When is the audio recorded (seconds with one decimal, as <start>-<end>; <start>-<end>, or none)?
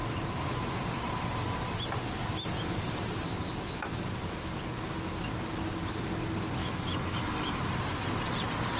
0.0-6.6; 7.6-8.8